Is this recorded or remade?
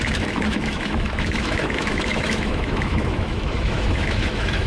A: remade